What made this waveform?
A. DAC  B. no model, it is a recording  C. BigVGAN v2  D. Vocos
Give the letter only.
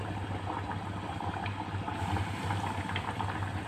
B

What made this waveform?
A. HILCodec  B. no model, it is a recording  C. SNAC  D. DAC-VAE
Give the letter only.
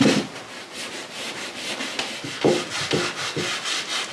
B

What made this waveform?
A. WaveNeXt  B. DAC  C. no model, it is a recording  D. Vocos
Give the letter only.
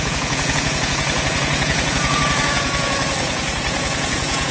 D